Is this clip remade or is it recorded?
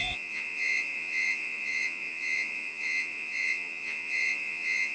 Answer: remade